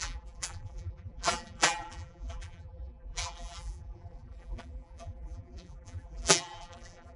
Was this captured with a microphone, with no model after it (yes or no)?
no